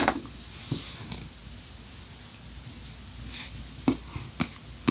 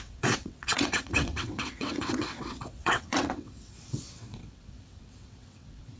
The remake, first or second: second